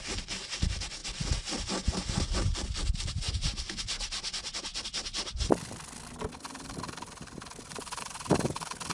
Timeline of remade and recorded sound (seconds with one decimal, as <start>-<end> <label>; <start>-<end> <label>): 0.0-8.9 recorded